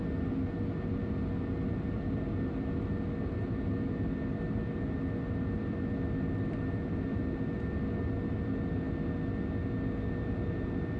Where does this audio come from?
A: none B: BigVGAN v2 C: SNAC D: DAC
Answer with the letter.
A